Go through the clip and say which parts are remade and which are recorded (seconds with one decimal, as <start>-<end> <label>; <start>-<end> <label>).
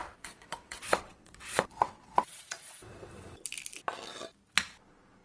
0.0-3.1 remade; 3.1-5.2 recorded